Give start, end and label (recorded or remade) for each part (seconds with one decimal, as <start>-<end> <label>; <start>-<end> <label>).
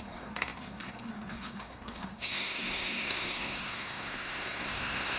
0.0-5.2 remade